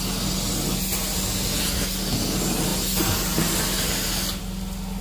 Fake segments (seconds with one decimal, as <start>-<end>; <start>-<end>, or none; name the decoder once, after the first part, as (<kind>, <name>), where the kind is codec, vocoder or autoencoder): none